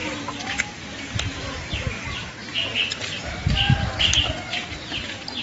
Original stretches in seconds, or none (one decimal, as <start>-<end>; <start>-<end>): 0.0-5.4